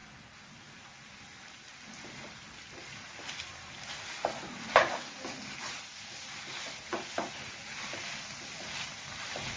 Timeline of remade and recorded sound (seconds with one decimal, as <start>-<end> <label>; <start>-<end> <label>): 0.0-9.6 recorded